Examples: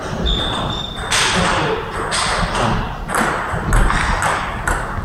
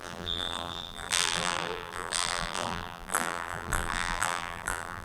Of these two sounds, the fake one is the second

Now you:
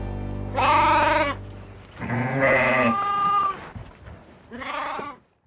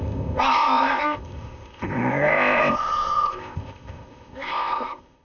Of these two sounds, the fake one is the second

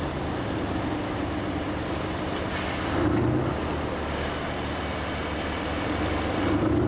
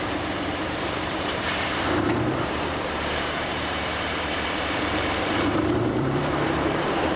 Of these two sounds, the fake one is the second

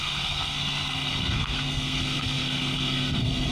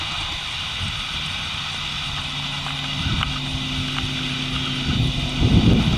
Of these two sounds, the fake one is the first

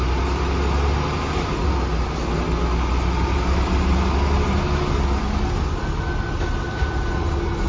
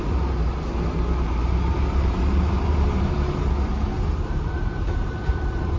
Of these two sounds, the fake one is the second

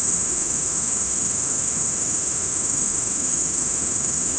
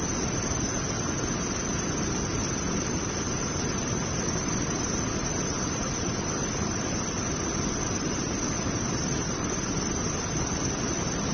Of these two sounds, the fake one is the first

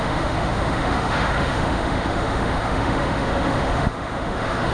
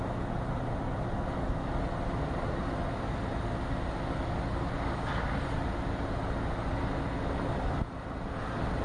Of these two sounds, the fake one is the first